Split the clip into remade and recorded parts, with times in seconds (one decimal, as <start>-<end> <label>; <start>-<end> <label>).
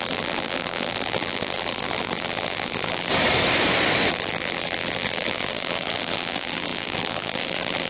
0.0-3.1 remade; 3.1-4.1 recorded; 4.1-7.9 remade